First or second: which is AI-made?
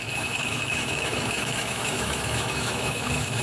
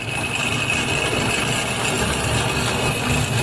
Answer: first